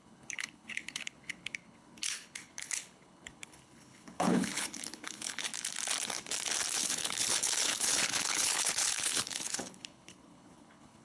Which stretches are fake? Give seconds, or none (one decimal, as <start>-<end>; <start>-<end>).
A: 0.0-5.5; 6.7-11.0